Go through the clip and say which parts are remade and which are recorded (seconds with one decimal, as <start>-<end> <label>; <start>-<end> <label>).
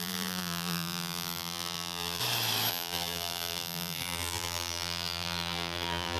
0.0-2.2 remade; 2.2-2.7 recorded; 2.7-6.2 remade